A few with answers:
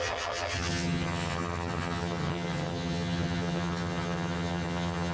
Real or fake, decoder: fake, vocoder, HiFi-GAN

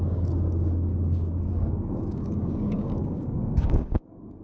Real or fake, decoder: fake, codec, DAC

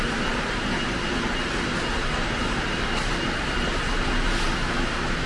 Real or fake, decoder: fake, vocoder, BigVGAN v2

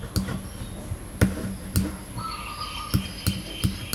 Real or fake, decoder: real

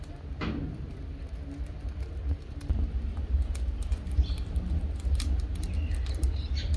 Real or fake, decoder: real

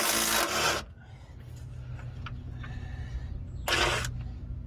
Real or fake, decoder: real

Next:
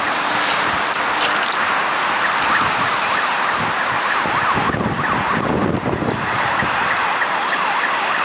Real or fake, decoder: real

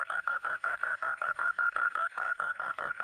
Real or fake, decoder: fake, codec, DAC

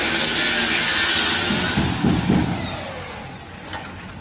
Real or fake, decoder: real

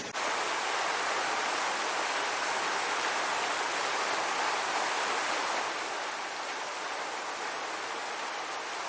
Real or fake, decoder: real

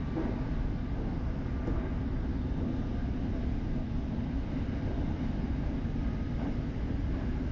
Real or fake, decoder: real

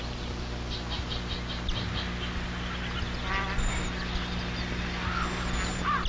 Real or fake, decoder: real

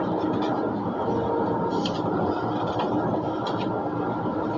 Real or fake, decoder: real